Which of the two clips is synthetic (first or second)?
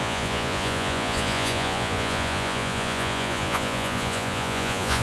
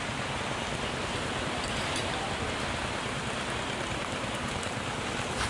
first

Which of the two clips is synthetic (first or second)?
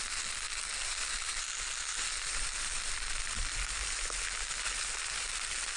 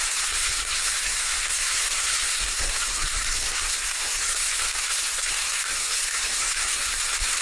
second